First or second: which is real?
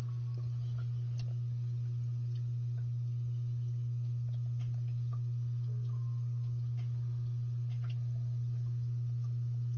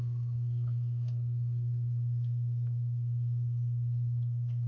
first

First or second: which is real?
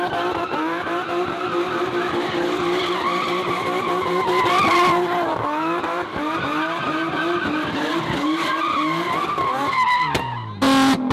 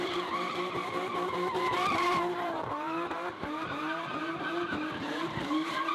first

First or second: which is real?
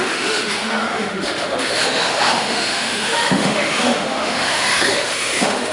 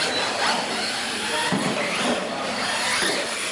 second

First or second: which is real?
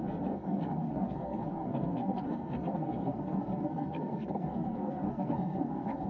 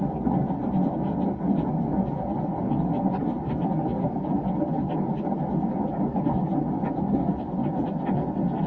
second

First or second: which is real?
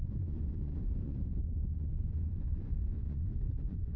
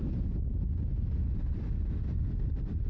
second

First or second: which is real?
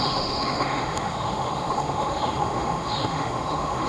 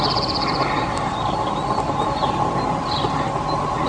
second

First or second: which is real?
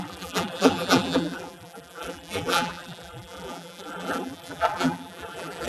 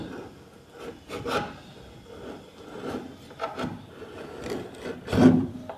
second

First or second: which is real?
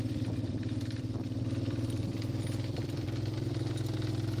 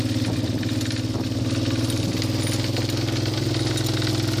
second